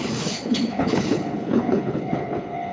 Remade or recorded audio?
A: remade